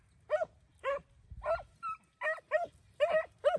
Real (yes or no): yes